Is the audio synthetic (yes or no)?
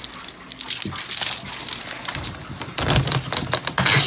no